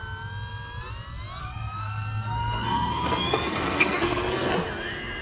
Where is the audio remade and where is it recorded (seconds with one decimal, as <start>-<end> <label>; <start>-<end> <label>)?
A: 0.0-1.4 recorded; 1.4-4.5 remade; 4.5-5.2 recorded